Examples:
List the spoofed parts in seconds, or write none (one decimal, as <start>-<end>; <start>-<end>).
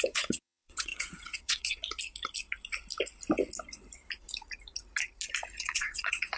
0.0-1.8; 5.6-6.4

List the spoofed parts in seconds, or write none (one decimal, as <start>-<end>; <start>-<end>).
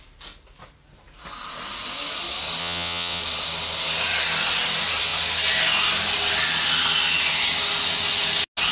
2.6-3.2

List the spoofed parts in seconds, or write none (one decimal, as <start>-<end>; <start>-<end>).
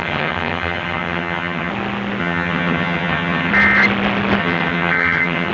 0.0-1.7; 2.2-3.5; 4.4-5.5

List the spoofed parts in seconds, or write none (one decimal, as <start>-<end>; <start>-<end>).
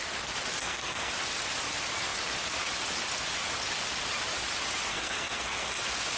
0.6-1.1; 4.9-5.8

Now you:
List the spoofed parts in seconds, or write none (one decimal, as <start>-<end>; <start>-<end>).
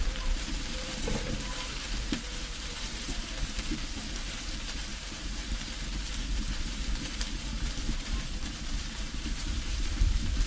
0.0-10.5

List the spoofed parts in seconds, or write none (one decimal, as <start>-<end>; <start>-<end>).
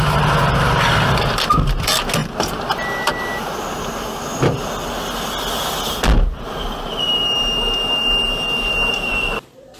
none